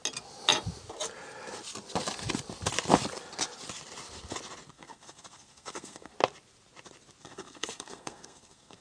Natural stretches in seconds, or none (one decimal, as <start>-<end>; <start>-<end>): 0.0-4.7; 6.1-7.2